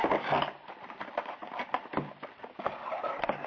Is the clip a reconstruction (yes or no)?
yes